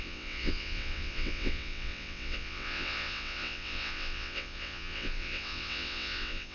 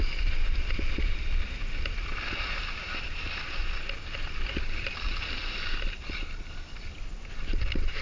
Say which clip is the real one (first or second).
second